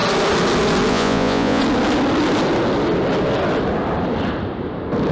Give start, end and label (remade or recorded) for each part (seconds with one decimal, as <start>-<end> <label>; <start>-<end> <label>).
0.0-0.9 recorded; 0.9-1.6 remade; 1.6-5.1 recorded